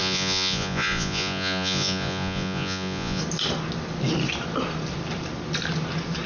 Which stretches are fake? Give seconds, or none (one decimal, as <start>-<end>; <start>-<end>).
0.0-3.2

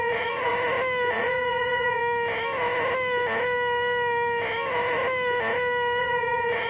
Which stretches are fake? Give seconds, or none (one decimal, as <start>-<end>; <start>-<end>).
0.0-0.5; 1.1-2.0; 6.0-6.7

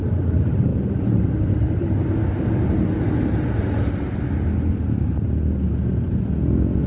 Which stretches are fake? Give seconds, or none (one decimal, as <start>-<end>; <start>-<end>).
none

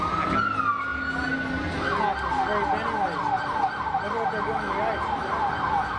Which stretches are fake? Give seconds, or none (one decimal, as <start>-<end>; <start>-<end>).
none

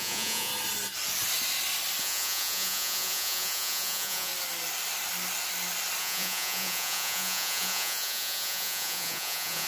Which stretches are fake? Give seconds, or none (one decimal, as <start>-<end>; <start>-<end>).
0.0-0.5; 2.0-4.3; 6.0-9.7

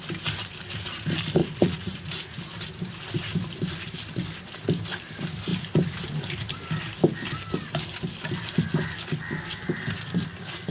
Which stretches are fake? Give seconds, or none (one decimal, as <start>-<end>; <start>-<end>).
1.4-2.4